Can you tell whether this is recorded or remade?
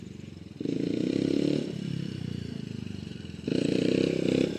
remade